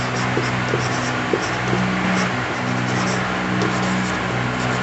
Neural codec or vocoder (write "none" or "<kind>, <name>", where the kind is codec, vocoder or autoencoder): none